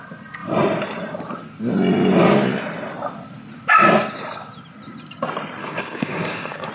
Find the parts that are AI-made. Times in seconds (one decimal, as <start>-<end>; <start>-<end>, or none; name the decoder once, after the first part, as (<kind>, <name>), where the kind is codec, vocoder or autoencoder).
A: 5.6-6.7 (codec, DAC)